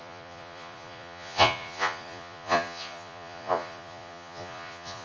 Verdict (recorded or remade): remade